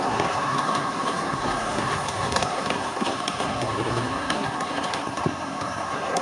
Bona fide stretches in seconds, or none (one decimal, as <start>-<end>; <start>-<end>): none